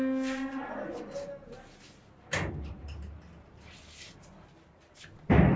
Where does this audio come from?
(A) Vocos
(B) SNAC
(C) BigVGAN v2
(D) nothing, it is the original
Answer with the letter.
D